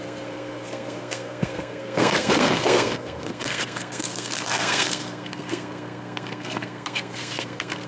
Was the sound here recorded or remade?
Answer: remade